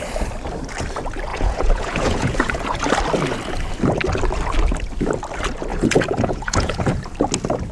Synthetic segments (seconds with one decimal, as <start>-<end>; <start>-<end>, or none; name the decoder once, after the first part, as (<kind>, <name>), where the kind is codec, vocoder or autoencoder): 1.3-2.8 (vocoder, Vocos); 5.7-6.8